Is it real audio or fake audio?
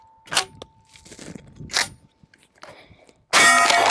real